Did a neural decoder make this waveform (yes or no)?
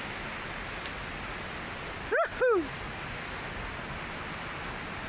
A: no